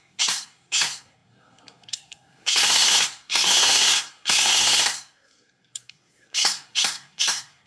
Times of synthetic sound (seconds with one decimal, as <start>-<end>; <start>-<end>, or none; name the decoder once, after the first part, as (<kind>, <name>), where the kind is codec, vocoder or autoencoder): 0.0-7.7 (codec, SNAC)